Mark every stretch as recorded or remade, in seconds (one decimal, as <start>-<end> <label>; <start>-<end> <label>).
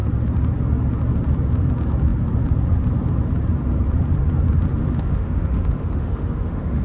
0.0-4.8 recorded; 4.8-6.8 remade